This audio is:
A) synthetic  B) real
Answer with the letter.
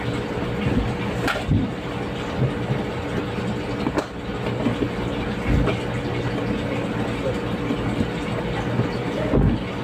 B